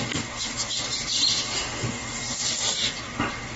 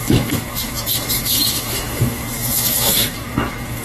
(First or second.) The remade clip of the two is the second